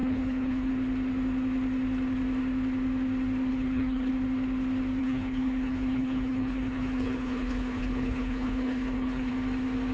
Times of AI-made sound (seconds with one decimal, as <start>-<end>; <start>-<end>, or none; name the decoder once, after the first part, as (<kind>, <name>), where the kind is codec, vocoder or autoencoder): 0.0-0.7 (codec, HILCodec); 3.5-4.1; 5.0-9.3